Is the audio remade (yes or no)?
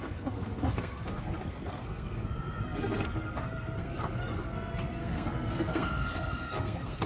yes